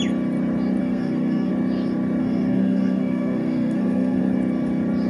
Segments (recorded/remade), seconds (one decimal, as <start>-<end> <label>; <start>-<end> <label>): 0.0-0.8 recorded; 0.8-1.5 remade; 1.5-2.2 recorded; 2.2-4.2 remade; 4.2-5.1 recorded